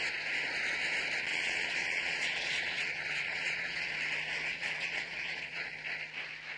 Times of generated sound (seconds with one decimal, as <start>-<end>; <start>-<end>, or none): 1.3-3.9; 4.5-5.7